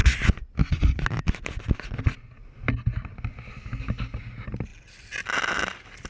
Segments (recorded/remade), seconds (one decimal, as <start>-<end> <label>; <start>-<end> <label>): 0.0-6.1 recorded